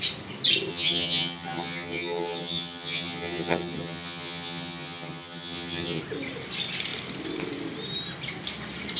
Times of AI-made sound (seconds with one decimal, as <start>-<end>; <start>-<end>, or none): 0.7-6.0